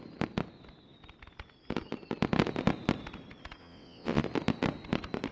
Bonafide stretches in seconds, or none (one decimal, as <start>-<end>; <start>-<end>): 0.0-3.6; 4.2-5.3